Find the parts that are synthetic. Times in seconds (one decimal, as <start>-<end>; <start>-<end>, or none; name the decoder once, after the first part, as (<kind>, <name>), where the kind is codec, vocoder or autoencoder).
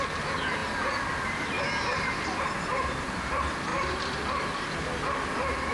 3.7-4.5 (vocoder, BigVGAN v2)